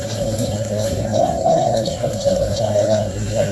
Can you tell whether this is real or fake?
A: fake